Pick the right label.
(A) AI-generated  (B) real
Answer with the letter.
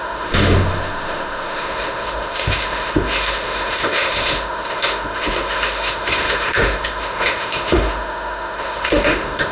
A